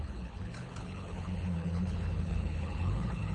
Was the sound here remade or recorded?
remade